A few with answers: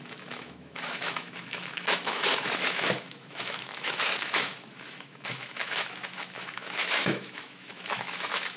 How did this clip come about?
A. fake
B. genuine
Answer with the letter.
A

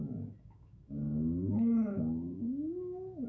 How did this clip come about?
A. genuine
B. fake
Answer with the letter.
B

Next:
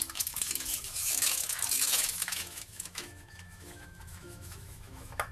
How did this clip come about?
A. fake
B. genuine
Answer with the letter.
A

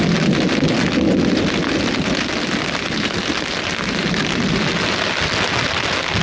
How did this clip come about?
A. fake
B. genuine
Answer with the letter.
B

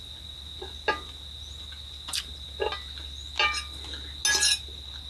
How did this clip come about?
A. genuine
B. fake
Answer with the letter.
A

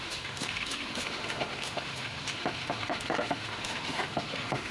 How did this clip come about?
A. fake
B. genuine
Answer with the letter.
A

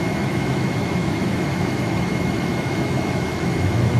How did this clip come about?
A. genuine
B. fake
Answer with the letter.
B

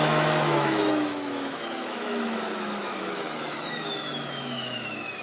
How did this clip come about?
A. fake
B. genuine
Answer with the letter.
A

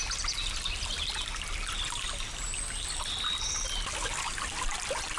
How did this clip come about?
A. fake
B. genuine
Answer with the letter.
B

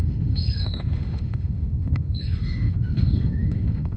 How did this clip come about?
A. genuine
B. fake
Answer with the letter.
B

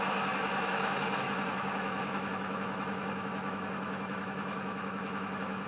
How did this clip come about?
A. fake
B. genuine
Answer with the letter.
A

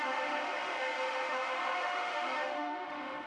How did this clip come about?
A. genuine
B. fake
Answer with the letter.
B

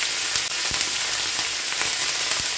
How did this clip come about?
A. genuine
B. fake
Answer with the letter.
A